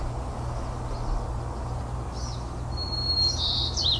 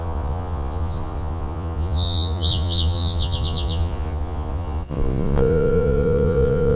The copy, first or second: second